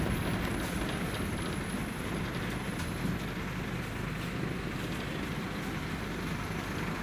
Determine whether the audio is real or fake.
real